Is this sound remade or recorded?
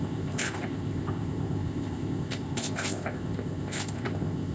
remade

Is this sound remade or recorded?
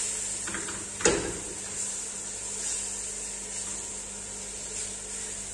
recorded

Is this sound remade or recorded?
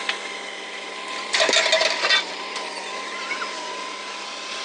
recorded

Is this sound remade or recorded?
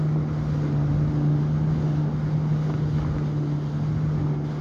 recorded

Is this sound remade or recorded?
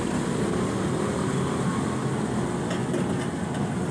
recorded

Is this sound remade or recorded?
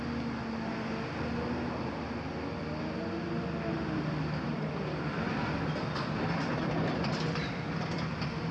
recorded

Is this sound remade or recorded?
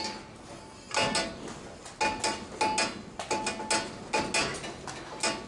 recorded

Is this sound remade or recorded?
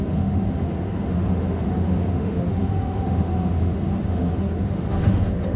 remade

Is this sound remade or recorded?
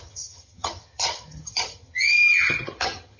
remade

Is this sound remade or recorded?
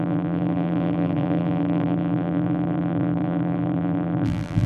remade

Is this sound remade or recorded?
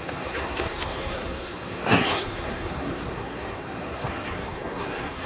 remade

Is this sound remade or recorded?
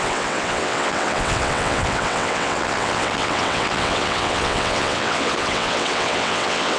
remade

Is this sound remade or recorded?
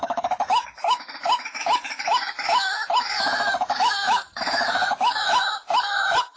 remade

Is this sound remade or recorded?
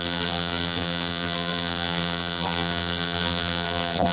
remade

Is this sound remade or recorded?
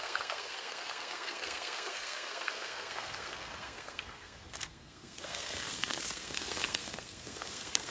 remade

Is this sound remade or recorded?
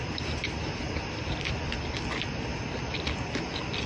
recorded